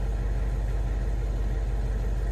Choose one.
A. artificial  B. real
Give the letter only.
B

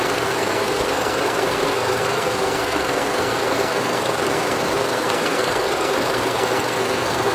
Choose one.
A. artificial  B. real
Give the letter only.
A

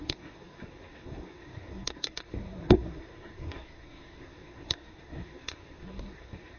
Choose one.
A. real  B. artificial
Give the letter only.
B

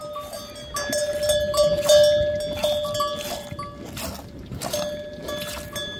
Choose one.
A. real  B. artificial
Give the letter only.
A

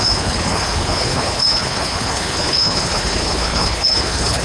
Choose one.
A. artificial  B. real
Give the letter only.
A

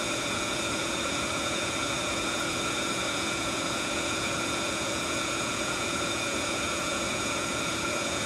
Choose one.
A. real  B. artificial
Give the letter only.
B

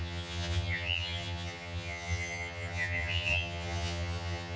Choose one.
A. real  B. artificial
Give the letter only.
B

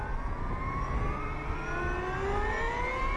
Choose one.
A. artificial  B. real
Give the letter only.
B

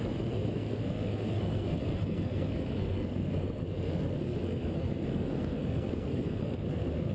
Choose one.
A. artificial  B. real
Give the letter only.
A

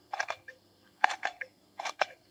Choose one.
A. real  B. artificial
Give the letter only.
B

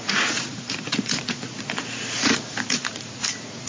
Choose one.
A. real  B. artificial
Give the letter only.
B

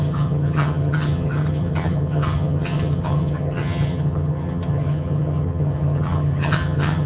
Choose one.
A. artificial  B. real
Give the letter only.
A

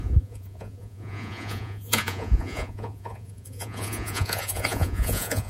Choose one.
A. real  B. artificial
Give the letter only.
B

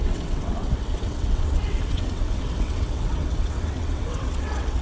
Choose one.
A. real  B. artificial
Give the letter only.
B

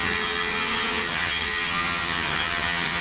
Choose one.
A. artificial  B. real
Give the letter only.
A